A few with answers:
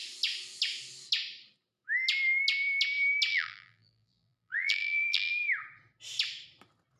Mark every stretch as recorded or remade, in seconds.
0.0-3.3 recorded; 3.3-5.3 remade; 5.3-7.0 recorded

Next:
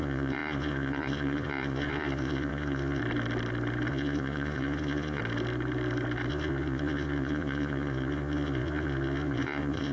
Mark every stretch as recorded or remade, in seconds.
0.0-3.0 remade; 3.0-3.9 recorded; 3.9-5.2 remade; 5.2-6.3 recorded; 6.3-9.9 remade

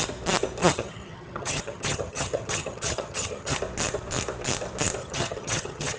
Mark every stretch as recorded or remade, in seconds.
0.0-0.6 recorded; 0.6-3.6 remade; 3.6-5.0 recorded; 5.0-6.0 remade